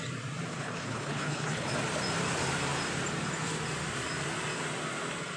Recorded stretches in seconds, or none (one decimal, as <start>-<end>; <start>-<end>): 0.0-0.5; 1.7-5.4